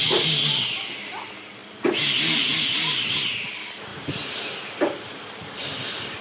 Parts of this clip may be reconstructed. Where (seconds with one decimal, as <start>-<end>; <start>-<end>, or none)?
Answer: none